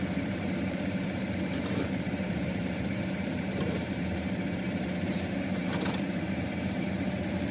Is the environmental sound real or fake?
fake